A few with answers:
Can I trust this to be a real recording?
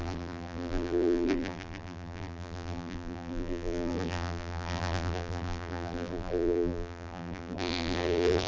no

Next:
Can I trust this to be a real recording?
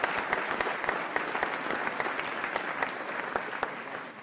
yes